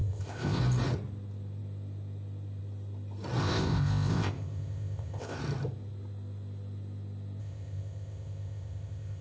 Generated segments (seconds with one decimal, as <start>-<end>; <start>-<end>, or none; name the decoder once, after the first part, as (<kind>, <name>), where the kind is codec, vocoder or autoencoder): 0.0-0.6 (codec, ZipCodec); 3.4-5.4; 7.4-9.2